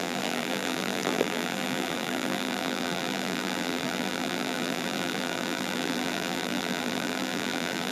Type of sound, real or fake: fake